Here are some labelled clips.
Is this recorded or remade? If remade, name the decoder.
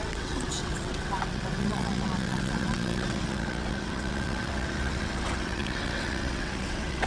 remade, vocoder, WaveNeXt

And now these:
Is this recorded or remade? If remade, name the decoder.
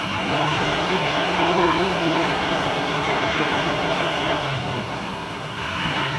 remade, codec, SNAC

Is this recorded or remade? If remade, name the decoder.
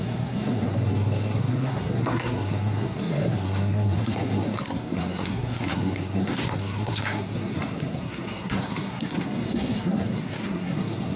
remade, codec, SNAC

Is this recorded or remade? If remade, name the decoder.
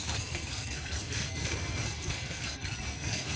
remade, codec, SNAC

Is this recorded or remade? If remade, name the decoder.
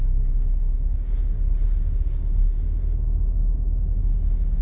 recorded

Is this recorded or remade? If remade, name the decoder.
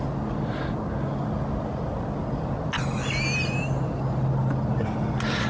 recorded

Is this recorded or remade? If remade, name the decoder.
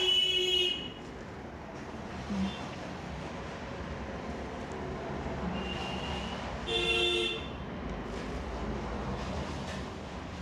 recorded